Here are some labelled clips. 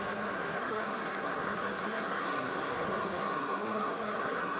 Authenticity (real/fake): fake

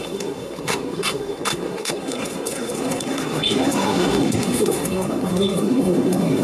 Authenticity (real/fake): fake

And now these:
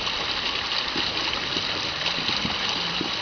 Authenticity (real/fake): real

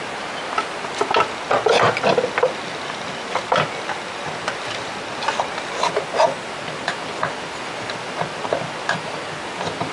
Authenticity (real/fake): real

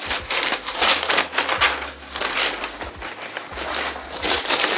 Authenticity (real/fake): real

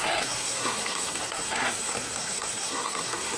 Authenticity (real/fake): fake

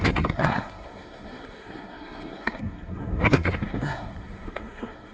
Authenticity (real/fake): fake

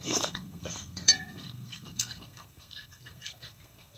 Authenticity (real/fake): fake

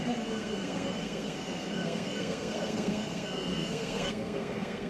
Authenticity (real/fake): fake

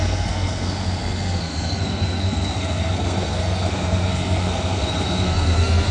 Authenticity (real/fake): fake